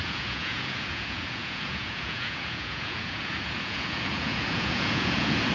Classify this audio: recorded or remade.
remade